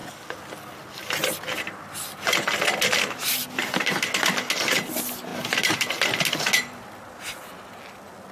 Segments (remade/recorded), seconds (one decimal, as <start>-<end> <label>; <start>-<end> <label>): 0.0-3.4 recorded; 3.4-4.0 remade; 4.0-8.3 recorded